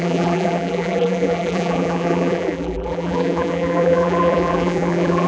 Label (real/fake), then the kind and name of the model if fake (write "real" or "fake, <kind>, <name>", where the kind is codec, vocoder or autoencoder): fake, vocoder, BigVGAN v2